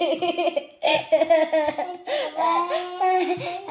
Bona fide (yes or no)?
yes